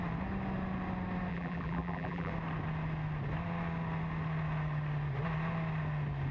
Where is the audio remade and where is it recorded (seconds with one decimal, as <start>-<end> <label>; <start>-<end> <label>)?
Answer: 0.0-1.3 recorded; 1.3-2.3 remade; 2.3-6.3 recorded